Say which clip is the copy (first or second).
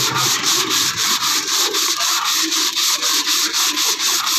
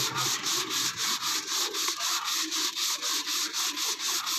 first